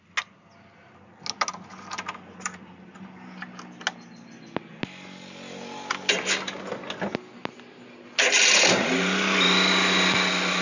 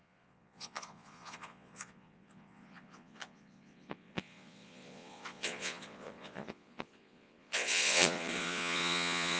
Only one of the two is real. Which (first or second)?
first